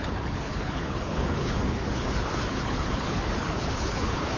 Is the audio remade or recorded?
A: remade